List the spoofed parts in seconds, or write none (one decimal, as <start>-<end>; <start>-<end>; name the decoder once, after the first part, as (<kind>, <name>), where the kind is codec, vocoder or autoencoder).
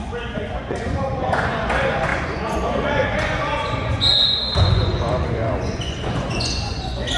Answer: 0.0-7.2 (vocoder, Vocos)